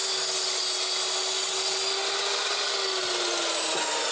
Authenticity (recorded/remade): recorded